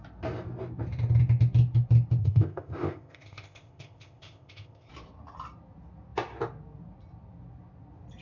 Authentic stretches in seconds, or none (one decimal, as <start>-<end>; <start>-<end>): 0.0-2.2; 4.9-8.2